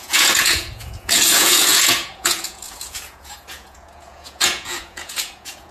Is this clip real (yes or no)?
no